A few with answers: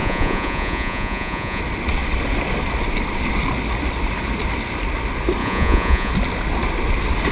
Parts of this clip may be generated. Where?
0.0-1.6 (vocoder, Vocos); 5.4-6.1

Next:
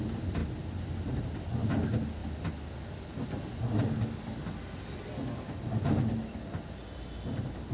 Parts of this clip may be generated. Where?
none

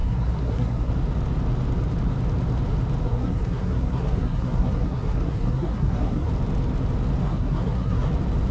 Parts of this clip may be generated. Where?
0.0-0.9 (codec, SNAC); 3.0-6.3; 7.2-8.1